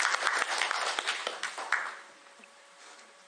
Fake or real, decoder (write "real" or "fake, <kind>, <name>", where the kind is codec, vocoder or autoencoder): fake, vocoder, BigVGAN v2